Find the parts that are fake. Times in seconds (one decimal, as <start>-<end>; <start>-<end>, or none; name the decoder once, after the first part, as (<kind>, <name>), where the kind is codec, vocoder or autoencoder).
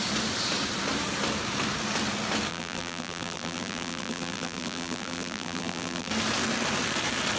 2.5-6.1 (vocoder, BigVGAN v2)